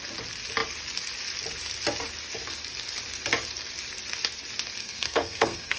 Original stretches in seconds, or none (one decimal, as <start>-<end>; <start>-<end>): 0.0-4.8